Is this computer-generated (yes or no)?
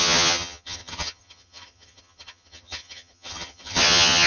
yes